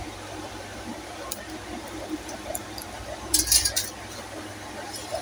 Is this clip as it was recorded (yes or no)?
no